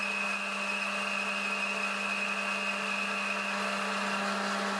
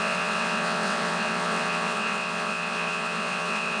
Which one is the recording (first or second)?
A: first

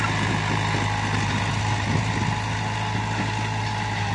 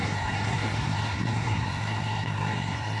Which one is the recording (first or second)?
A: first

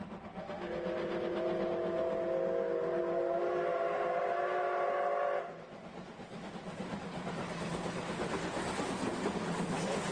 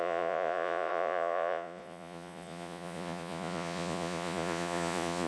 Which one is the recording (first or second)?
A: first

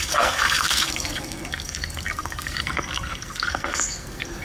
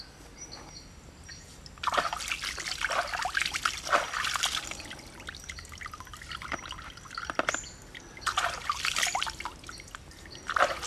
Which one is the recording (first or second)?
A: second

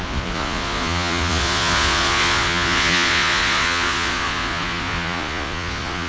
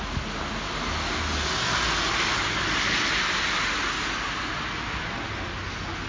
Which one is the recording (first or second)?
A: second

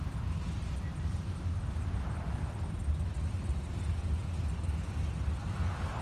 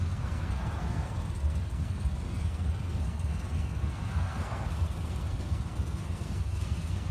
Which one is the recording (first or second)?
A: first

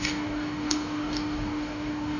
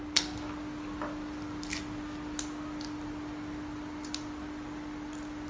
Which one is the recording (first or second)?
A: second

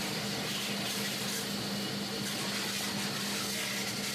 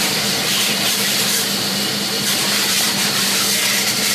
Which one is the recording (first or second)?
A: first